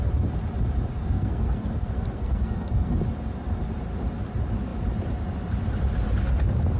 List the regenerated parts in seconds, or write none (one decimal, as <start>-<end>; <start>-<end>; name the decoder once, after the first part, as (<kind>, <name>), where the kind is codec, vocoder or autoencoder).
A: 1.0-3.0 (codec, SNAC)